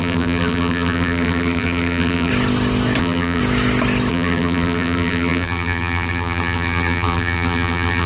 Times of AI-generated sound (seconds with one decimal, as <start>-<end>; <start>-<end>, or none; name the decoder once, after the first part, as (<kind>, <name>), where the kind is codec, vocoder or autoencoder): 0.0-2.3 (vocoder, BigVGAN v2); 3.0-3.4; 4.1-8.1